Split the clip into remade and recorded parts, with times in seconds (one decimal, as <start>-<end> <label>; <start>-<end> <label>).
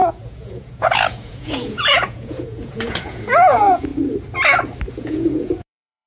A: 0.0-3.9 remade; 3.9-4.9 recorded; 4.9-6.1 remade